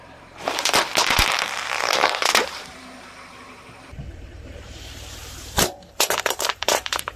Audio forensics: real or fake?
fake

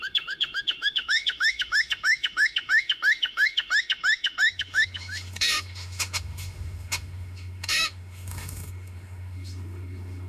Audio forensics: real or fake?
fake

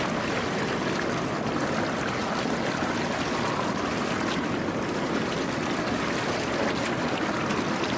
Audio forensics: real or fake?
real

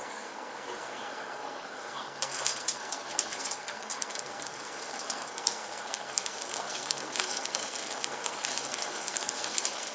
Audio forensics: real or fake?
fake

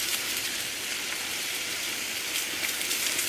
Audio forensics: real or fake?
fake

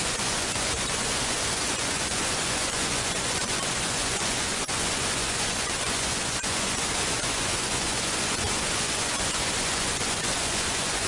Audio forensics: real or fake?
fake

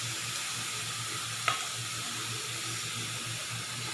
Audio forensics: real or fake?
real